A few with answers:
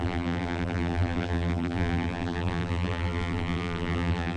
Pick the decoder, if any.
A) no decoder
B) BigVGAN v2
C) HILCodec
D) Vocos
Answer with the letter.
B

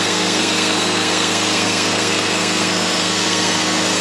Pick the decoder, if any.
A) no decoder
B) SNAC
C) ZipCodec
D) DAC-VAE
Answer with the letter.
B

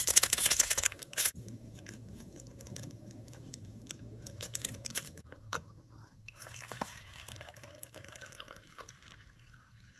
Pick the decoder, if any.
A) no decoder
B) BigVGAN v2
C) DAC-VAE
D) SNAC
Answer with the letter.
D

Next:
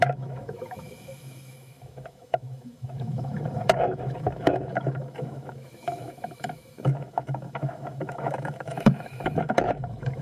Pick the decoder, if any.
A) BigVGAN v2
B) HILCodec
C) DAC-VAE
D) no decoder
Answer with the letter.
C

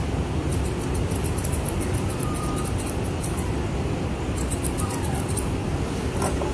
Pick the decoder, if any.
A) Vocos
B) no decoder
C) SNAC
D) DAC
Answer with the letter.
B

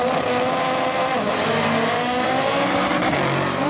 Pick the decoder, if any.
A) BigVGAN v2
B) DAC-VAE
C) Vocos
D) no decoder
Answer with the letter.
D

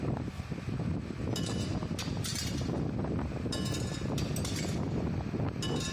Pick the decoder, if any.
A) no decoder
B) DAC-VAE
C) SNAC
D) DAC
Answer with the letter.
A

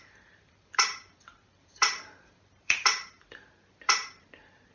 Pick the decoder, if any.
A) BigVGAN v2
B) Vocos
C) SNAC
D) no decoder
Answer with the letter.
A